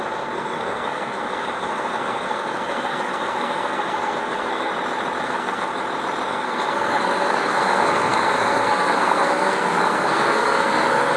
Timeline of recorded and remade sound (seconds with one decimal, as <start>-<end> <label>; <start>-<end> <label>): 0.0-4.7 remade; 4.7-5.2 recorded; 5.2-5.7 remade; 5.7-6.3 recorded; 6.3-11.2 remade